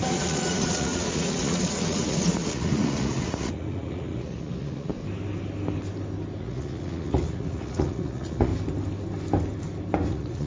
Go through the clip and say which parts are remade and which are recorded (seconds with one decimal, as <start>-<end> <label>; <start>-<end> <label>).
0.0-4.9 remade; 4.9-6.4 recorded; 6.4-8.5 remade; 8.5-10.1 recorded; 10.1-10.5 remade